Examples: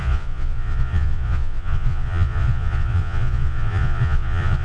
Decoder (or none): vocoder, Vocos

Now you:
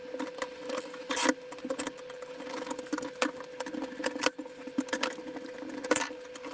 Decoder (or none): none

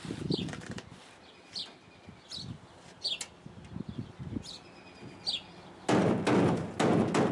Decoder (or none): none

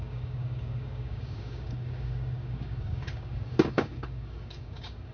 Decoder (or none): codec, DAC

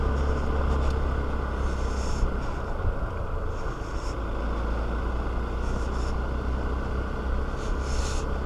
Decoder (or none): none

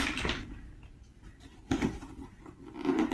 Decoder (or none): none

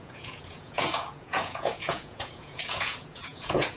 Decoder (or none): vocoder, Vocos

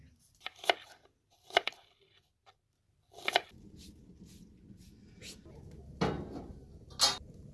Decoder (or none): none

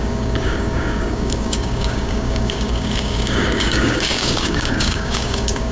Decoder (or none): codec, DAC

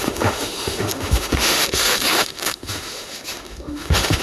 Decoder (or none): autoencoder, DAC-VAE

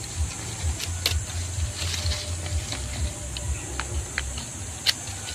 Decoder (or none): none